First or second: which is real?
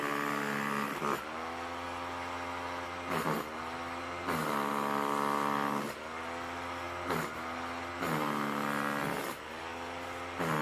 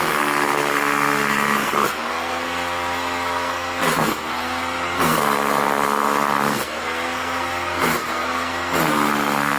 first